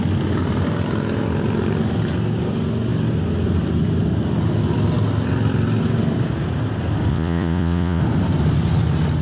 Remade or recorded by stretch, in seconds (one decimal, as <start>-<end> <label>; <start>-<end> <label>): 0.0-7.1 recorded; 7.1-8.0 remade; 8.0-9.2 recorded